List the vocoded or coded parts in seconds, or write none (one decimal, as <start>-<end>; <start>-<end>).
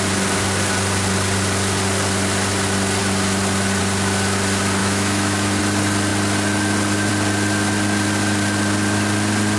4.8-5.6